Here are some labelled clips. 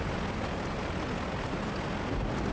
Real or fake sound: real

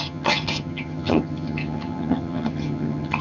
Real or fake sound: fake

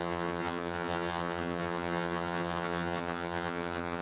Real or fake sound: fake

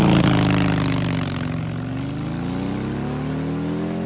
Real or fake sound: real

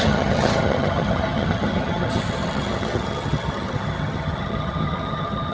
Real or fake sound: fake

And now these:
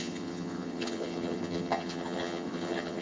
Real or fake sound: fake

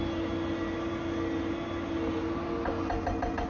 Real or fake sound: real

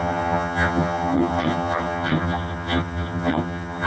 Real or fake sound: fake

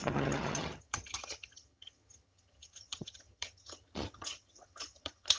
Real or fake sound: fake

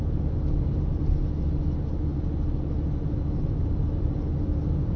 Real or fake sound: real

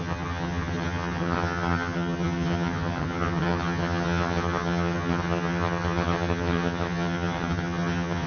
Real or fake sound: fake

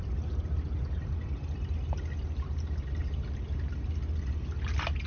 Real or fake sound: real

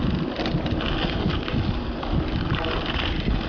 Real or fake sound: real